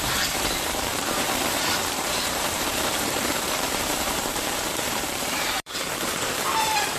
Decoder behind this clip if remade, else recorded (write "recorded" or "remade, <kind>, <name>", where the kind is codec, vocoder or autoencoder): remade, vocoder, BigVGAN v2